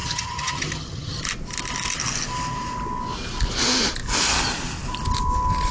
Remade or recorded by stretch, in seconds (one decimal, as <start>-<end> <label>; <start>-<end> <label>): 0.0-1.2 remade; 1.2-5.7 recorded